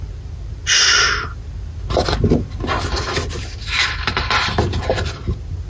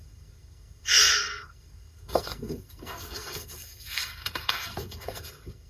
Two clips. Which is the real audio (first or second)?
first